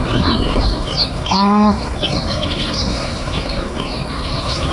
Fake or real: fake